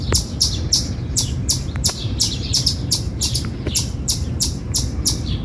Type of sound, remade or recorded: remade